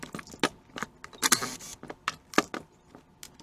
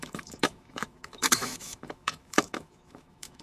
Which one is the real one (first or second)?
first